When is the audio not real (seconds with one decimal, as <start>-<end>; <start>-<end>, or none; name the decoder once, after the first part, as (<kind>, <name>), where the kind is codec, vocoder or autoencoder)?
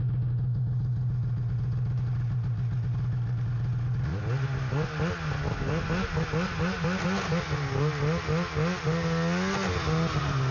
none